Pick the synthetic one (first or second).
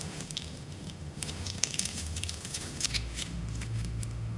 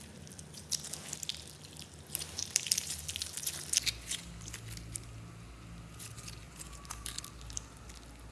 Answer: first